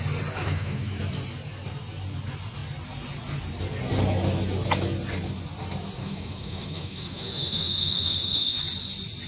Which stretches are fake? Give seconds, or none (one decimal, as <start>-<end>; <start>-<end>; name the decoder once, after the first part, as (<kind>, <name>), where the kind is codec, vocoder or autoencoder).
0.4-0.9 (autoencoder, DAC-VAE); 6.0-8.6